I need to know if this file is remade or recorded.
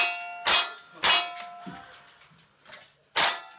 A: recorded